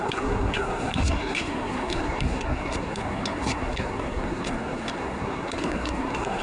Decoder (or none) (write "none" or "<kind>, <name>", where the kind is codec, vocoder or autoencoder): codec, SNAC